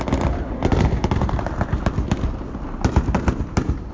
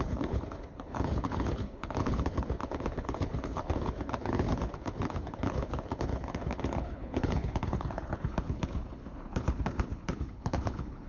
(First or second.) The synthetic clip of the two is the second